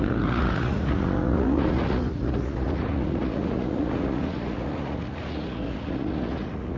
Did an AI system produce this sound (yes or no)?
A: yes